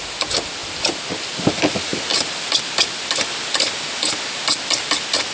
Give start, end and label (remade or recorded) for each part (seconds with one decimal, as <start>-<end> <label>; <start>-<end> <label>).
0.0-5.3 recorded